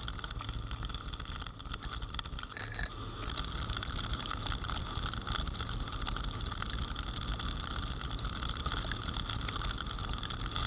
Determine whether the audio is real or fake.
real